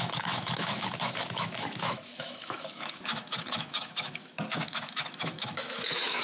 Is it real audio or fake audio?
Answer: fake